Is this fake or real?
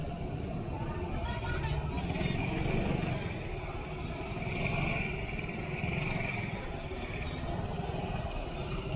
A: real